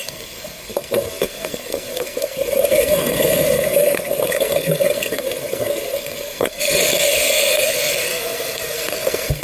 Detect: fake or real fake